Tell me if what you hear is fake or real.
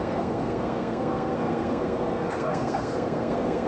fake